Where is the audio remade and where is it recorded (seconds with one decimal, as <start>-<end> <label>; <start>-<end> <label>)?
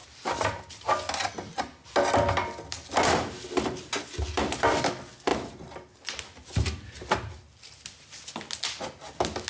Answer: 0.0-0.6 remade; 0.6-9.5 recorded